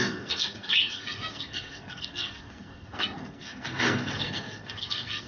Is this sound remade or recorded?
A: remade